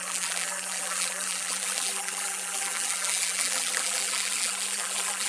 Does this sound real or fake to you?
fake